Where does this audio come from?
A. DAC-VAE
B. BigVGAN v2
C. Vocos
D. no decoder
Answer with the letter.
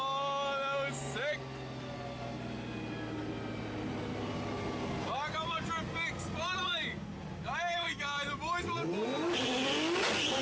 D